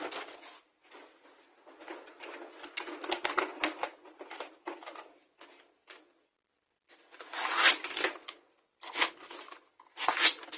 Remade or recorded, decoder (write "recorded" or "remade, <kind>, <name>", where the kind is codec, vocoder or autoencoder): recorded